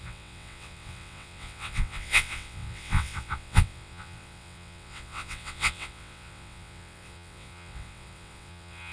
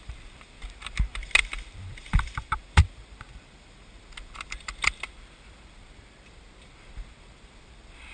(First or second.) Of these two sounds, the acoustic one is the second